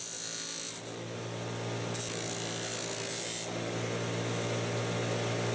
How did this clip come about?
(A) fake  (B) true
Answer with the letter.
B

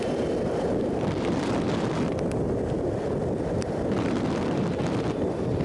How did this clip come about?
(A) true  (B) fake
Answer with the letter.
B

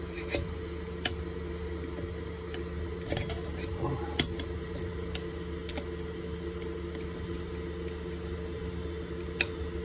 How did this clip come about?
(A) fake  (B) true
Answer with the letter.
B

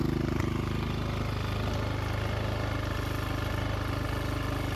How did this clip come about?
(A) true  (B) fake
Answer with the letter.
A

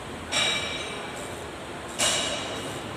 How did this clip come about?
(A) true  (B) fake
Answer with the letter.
A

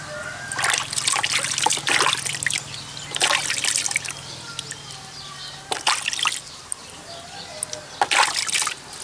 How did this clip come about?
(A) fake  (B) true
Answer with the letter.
B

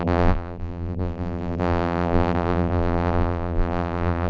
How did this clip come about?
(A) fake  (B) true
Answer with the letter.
A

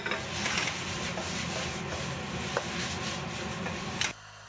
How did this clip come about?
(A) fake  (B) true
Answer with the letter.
B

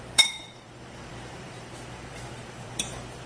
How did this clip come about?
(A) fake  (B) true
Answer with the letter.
A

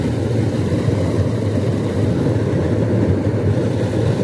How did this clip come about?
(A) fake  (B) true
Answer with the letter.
B